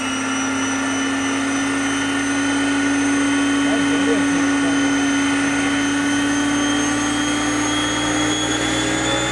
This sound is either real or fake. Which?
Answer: real